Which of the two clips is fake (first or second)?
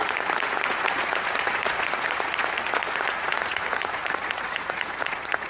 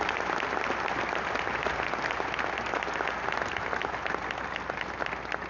first